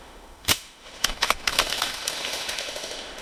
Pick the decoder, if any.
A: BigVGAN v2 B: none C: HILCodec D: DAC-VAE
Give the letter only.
D